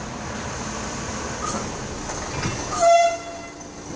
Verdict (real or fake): real